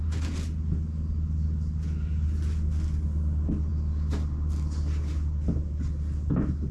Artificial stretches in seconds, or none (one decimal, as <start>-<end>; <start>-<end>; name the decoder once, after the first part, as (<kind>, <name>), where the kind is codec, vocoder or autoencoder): none